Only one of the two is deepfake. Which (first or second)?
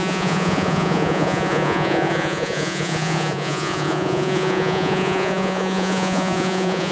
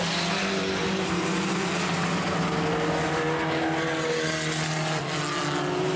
first